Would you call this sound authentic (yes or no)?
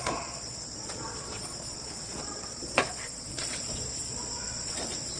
no